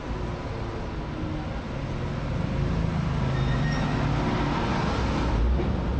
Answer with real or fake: real